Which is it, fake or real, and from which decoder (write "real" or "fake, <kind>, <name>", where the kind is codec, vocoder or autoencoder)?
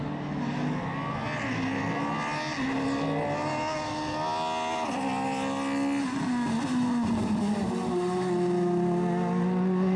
real